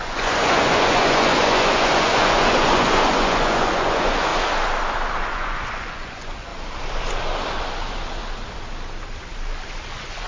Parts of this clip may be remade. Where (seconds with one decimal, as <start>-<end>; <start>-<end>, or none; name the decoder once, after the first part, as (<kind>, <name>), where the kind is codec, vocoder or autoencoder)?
0.0-4.3 (vocoder, Vocos); 5.3-6.5; 9.9-10.3